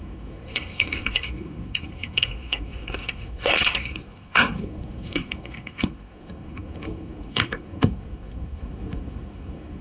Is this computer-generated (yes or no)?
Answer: yes